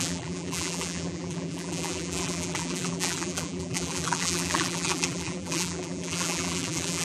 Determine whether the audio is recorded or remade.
remade